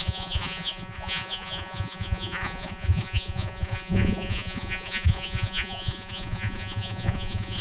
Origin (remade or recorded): remade